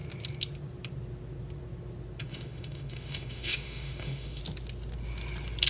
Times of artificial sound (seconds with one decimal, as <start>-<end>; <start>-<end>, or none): 2.2-4.4